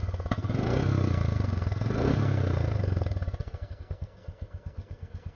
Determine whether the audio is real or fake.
fake